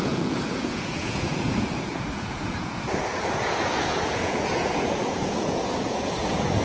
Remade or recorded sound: remade